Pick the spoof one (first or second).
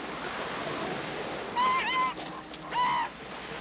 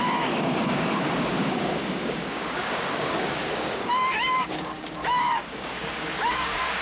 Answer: second